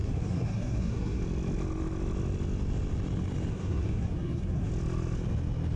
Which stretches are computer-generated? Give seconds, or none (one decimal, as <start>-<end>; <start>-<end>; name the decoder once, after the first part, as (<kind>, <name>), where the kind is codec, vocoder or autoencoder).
0.0-1.2 (codec, SNAC); 3.5-4.7